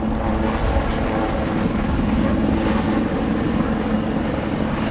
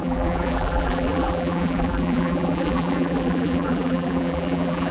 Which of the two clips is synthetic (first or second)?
second